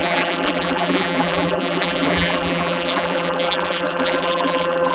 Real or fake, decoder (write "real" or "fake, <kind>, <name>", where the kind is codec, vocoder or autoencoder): fake, vocoder, BigVGAN v2